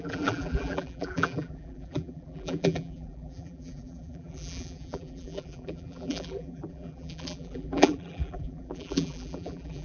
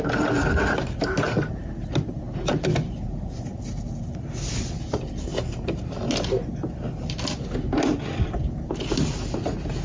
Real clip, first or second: second